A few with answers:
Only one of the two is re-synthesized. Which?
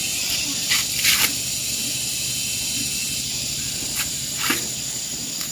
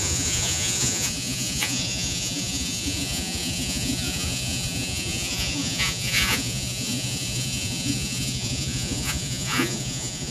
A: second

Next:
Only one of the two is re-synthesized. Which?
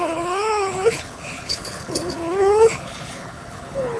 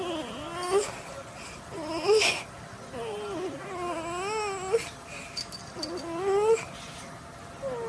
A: first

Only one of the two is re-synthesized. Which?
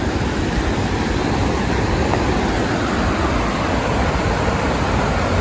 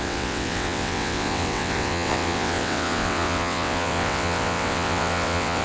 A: second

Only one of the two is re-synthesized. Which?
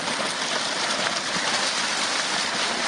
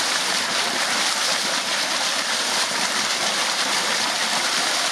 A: second